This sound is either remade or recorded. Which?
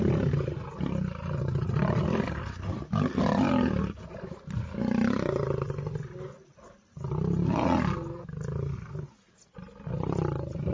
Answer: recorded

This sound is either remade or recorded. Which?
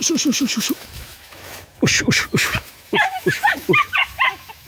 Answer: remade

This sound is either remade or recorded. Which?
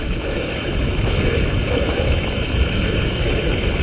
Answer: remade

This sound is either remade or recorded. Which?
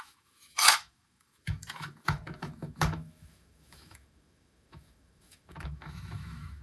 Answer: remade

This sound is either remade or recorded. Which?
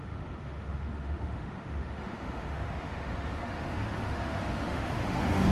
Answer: remade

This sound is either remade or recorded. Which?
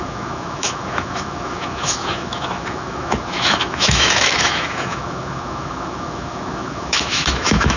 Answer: remade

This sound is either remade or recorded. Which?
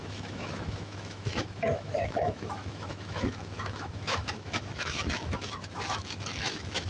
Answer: remade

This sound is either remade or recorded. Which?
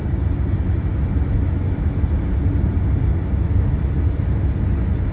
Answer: recorded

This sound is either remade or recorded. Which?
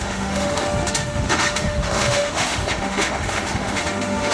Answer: remade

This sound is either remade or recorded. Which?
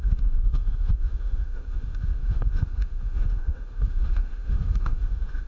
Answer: remade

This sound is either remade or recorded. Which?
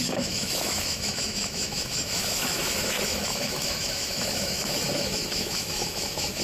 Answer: remade